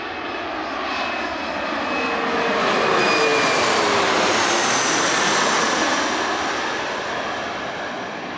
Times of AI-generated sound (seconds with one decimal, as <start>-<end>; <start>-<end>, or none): none